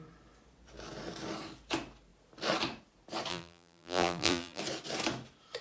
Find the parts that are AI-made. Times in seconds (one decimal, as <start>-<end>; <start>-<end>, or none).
3.3-4.6